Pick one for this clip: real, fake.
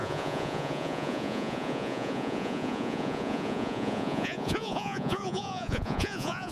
fake